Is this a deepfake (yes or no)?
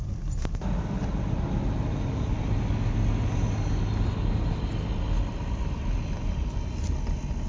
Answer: no